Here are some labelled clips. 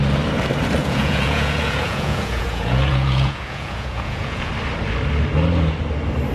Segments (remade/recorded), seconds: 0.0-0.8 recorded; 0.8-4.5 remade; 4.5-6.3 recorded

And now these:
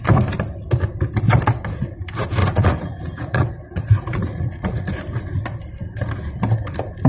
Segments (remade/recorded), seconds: 0.0-2.4 recorded; 2.4-4.9 remade; 4.9-7.1 recorded

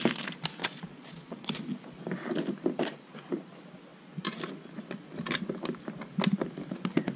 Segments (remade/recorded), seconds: 0.0-0.6 recorded; 0.6-1.6 remade; 1.6-7.2 recorded

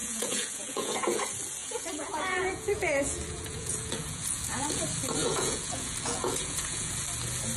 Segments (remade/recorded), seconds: 0.0-1.2 remade; 1.2-1.6 recorded; 1.6-4.8 remade; 4.8-5.2 recorded; 5.2-6.9 remade; 6.9-7.6 recorded